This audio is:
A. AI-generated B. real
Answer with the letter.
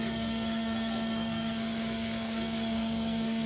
A